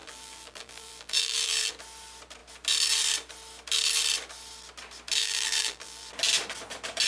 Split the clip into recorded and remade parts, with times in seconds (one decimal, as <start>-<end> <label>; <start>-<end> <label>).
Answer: 0.0-1.7 remade; 1.7-5.2 recorded; 5.2-6.1 remade; 6.1-7.1 recorded